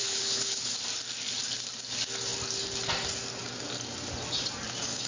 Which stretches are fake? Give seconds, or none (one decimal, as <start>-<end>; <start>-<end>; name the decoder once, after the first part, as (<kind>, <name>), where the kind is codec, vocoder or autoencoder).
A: 0.0-0.7 (codec, HILCodec)